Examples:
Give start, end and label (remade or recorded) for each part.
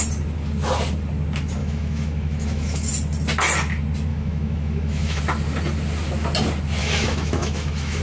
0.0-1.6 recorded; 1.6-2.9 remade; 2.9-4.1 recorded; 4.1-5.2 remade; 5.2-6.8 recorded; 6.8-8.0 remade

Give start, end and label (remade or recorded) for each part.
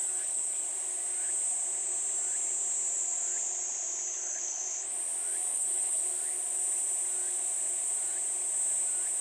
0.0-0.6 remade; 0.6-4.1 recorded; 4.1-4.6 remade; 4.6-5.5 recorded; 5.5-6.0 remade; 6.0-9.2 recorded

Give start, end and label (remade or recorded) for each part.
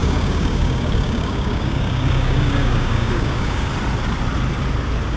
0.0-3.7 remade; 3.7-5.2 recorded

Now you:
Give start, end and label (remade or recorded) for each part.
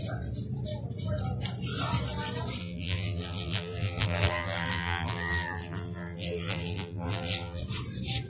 0.0-2.6 recorded; 2.6-7.6 remade; 7.6-8.3 recorded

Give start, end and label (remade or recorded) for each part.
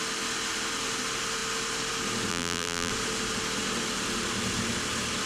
0.0-2.3 recorded; 2.3-2.9 remade; 2.9-5.3 recorded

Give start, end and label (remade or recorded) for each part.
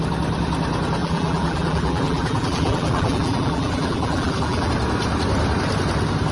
0.0-1.0 recorded; 1.0-4.7 remade; 4.7-6.3 recorded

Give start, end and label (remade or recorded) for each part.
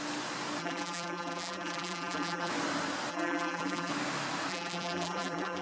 0.0-0.6 recorded; 0.6-2.5 remade; 2.5-3.1 recorded; 3.1-3.9 remade; 3.9-4.5 recorded; 4.5-5.6 remade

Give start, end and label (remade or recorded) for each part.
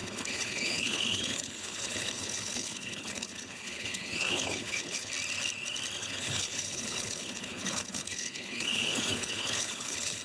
0.0-5.1 remade; 5.1-6.0 recorded; 6.0-10.2 remade